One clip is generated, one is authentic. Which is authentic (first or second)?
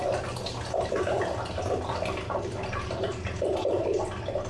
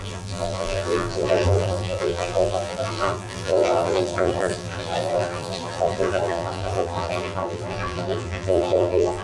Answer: first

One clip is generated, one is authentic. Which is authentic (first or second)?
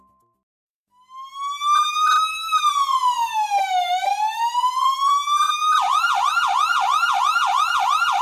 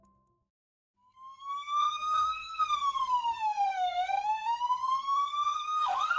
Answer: first